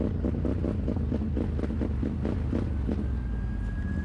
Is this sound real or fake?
real